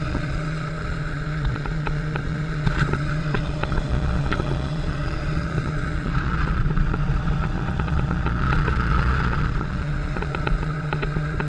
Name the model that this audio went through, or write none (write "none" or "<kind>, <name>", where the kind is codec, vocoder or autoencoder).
vocoder, Vocos